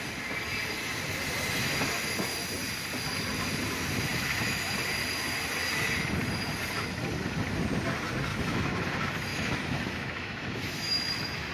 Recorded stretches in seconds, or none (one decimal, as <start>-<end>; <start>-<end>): 0.0-8.3; 8.8-9.3

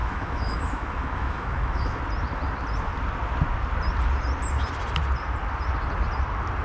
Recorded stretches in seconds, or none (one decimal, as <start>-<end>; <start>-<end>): 2.0-6.6

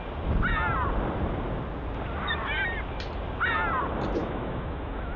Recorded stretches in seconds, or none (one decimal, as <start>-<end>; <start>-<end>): 0.0-4.2